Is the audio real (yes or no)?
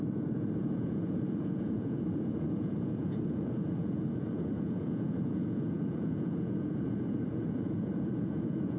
no